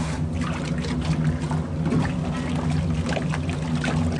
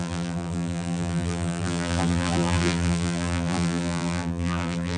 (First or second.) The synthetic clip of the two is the second